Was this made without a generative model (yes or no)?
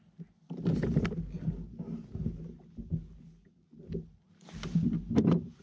yes